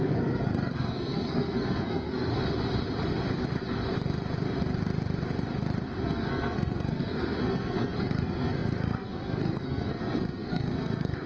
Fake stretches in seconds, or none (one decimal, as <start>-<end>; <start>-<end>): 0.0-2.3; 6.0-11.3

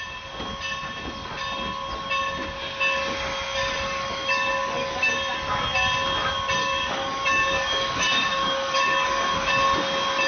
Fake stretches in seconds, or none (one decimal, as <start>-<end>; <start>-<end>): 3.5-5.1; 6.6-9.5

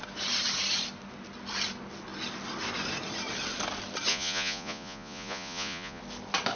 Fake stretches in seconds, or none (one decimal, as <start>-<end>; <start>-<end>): 4.1-6.0

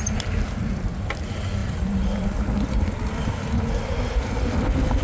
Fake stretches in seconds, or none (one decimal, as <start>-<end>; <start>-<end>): none

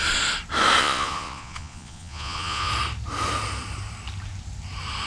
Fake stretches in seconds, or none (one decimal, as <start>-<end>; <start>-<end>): 0.8-2.7

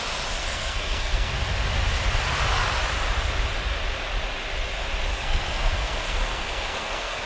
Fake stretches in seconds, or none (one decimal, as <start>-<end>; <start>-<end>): 0.4-1.3; 5.1-7.3